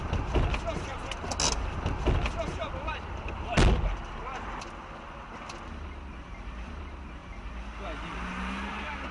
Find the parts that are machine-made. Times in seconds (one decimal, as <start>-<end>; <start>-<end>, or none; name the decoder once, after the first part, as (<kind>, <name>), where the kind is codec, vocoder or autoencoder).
none